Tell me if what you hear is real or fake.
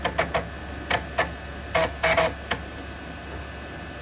real